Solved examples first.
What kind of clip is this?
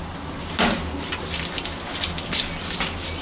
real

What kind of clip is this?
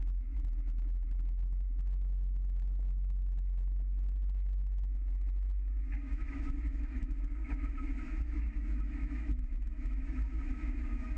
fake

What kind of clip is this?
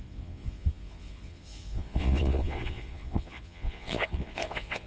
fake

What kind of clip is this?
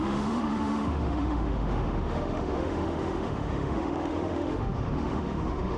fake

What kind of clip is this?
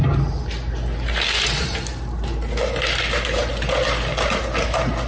real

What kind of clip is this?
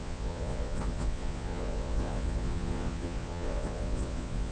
fake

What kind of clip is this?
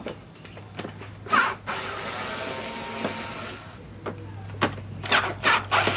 real